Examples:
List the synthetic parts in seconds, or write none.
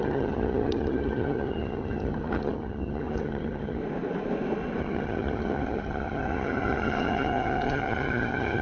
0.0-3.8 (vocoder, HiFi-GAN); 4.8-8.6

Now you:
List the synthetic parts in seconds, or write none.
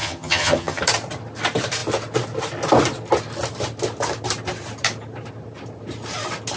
0.0-0.8 (vocoder, HiFi-GAN)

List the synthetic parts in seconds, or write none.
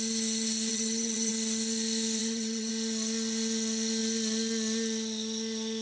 0.7-1.3 (vocoder, HiFi-GAN); 2.2-2.7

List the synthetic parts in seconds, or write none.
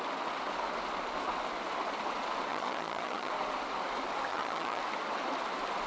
2.5-3.3 (vocoder, HiFi-GAN); 4.3-4.8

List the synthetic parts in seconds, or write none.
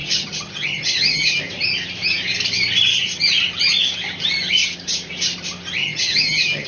0.0-1.4 (vocoder, HiFi-GAN); 5.8-6.7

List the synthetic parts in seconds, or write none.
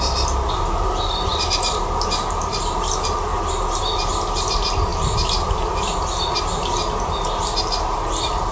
none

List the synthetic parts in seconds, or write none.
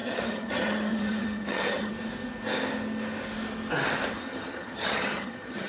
0.0-1.9 (vocoder, HiFi-GAN); 4.3-5.7